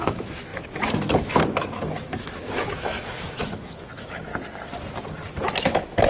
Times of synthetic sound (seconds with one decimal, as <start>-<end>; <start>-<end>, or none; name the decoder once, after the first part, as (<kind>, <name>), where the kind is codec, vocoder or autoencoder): 0.0-4.3 (autoencoder, DAC-VAE); 5.4-6.1

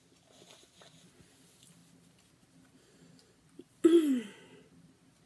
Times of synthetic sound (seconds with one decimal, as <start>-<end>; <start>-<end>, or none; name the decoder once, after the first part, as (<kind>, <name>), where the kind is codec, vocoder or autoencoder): none